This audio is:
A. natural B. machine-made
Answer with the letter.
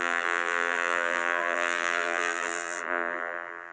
B